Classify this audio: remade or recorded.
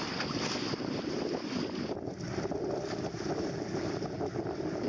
recorded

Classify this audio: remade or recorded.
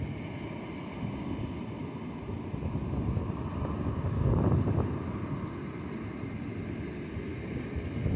recorded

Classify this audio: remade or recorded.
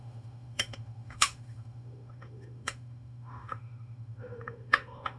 remade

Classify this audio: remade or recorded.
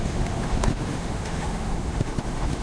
remade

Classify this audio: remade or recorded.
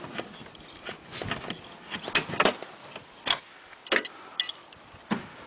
recorded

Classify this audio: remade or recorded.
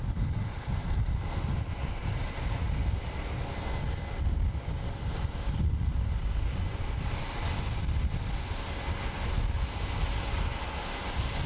recorded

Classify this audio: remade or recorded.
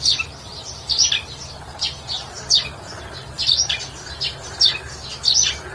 recorded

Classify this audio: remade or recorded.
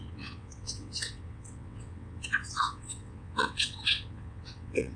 remade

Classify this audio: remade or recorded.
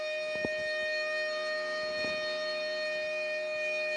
recorded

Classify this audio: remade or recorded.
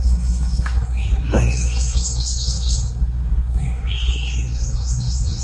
remade